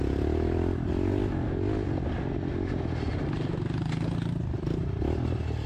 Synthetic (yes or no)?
no